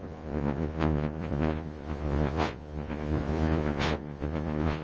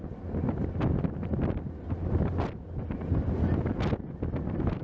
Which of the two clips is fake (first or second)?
first